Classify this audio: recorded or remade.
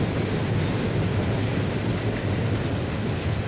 recorded